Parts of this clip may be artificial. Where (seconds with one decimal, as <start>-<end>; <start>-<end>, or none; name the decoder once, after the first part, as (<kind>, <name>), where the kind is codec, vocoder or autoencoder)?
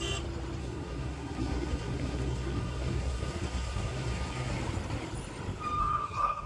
0.6-4.5 (codec, SNAC); 5.8-6.5